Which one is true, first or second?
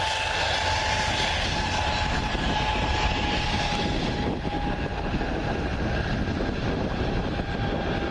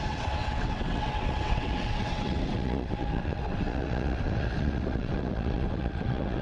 first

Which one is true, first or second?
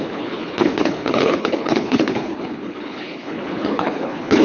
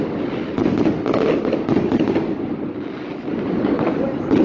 second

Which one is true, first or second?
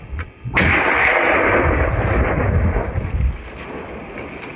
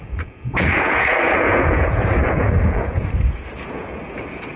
first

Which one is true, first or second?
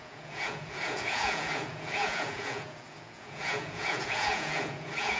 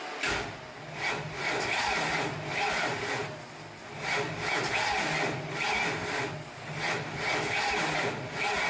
second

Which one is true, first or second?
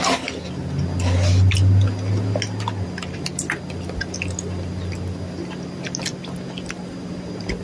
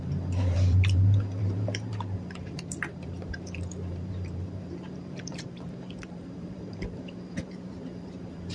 first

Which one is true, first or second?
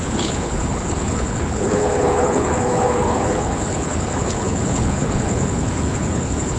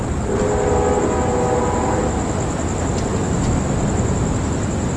second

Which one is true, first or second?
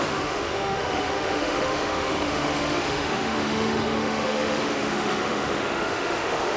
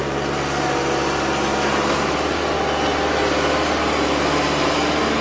second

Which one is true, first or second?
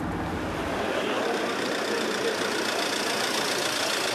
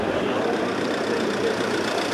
first